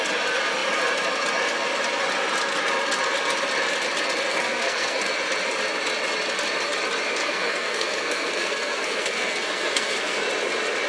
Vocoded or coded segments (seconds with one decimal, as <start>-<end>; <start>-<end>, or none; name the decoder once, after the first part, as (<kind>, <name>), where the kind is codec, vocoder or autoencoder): 4.3-5.1 (codec, SNAC); 7.2-10.2